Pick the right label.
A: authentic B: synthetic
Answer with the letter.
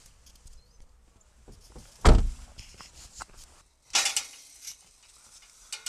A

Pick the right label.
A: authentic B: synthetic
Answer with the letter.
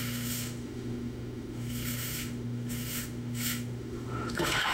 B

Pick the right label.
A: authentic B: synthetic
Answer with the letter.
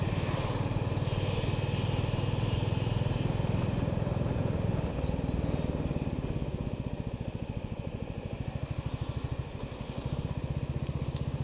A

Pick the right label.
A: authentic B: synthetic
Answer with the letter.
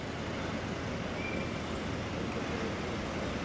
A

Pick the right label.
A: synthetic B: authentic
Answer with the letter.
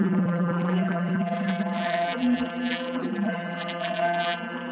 A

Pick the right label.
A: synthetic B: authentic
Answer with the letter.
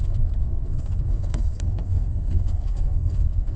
A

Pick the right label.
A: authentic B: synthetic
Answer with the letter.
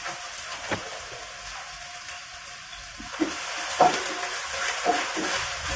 A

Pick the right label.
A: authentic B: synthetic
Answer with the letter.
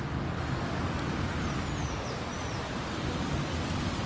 A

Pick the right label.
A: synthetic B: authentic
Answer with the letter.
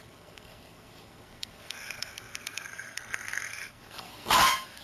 A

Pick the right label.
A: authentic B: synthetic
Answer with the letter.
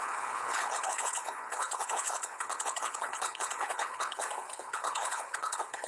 B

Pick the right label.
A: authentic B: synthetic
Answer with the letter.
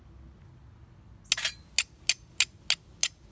A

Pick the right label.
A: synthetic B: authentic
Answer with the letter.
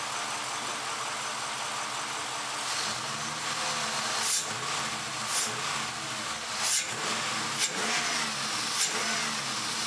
B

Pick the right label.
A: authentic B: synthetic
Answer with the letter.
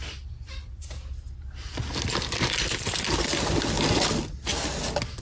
A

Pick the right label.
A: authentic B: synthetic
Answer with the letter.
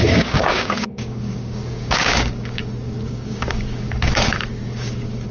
B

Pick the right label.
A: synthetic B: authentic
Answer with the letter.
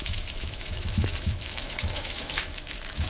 A